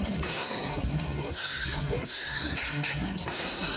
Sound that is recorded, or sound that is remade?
remade